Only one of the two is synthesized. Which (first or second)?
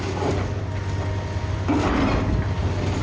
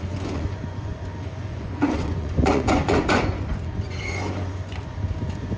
second